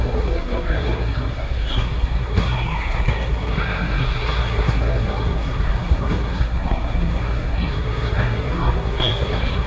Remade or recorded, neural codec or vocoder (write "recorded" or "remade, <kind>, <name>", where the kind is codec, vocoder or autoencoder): remade, codec, SNAC